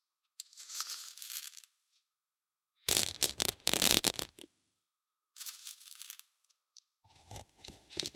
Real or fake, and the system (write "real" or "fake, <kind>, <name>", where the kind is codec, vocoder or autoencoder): fake, autoencoder, DAC-VAE